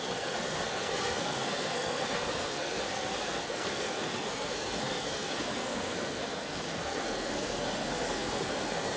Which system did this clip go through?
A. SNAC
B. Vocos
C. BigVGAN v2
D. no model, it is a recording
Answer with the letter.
A